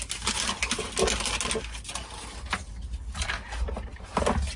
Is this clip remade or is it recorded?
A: recorded